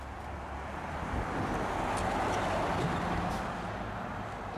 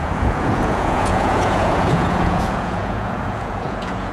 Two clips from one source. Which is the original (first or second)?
first